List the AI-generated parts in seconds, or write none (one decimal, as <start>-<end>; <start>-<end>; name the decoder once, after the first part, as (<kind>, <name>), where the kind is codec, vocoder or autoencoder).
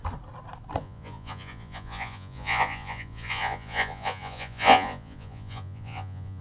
0.8-6.4 (vocoder, Vocos)